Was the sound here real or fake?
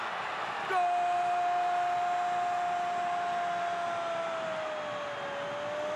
real